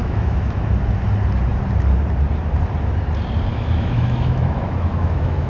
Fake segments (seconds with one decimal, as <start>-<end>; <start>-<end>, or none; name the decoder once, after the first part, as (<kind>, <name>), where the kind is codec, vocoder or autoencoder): 0.0-0.7 (autoencoder, DAC-VAE); 3.5-5.5